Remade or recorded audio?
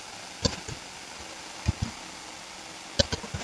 recorded